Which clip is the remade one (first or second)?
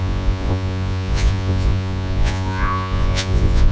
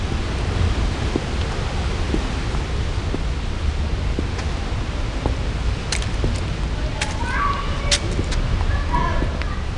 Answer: first